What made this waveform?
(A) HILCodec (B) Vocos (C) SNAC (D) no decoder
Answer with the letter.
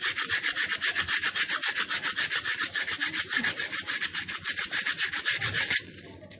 D